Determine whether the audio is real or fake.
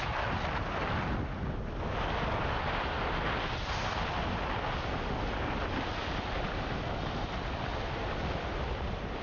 real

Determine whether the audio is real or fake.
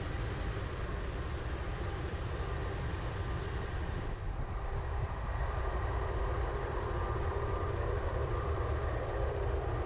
fake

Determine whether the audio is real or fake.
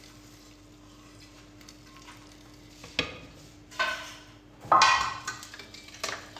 real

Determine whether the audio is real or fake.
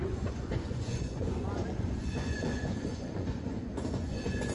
fake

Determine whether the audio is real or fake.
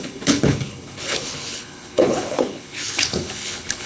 fake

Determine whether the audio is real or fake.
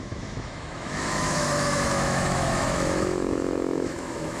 fake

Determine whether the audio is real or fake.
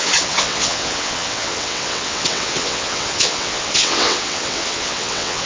fake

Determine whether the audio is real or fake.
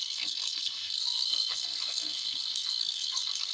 fake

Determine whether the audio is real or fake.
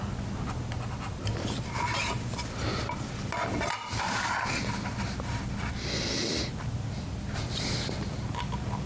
real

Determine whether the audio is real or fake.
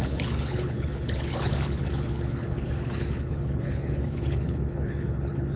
fake